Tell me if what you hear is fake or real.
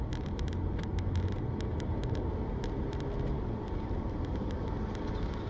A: real